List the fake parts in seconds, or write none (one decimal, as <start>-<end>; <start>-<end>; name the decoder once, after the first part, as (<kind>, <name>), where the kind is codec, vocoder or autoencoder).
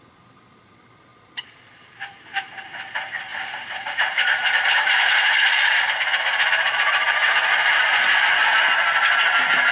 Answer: 1.1-2.5 (vocoder, BigVGAN v2); 3.3-7.8